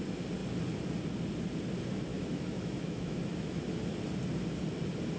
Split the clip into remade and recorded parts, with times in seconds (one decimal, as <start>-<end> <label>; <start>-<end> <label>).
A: 0.0-2.1 recorded; 2.1-3.7 remade; 3.7-5.2 recorded